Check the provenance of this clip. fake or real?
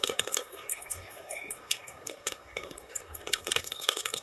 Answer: fake